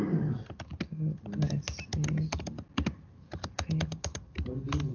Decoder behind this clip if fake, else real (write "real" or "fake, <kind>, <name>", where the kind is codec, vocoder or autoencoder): real